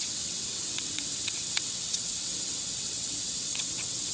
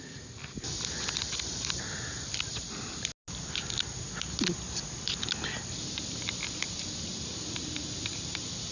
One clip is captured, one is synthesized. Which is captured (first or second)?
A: second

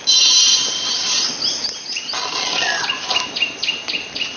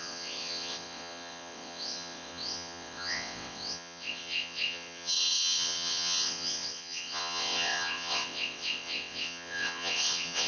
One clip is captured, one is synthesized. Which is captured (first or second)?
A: first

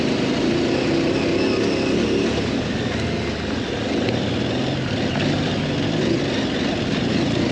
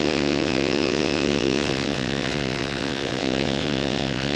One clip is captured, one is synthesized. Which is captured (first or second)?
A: first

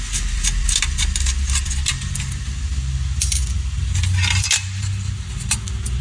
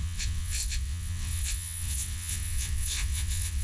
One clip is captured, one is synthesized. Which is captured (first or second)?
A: first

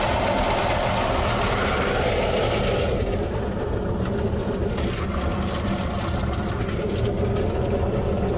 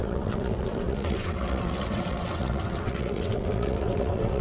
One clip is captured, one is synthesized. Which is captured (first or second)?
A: first